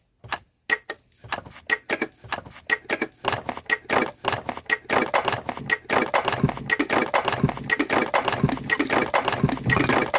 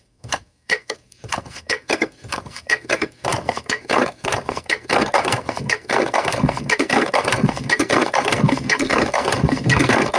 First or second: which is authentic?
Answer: first